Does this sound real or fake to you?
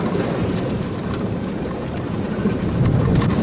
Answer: real